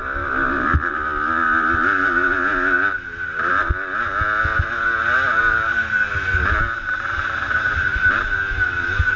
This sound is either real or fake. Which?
real